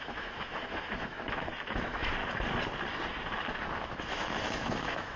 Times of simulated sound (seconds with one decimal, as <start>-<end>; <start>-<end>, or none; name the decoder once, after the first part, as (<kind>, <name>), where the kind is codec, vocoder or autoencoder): 0.0-2.2 (autoencoder, DAC-VAE); 3.8-5.2